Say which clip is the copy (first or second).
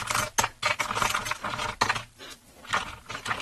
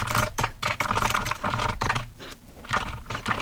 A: second